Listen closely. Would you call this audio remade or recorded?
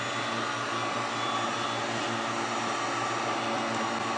recorded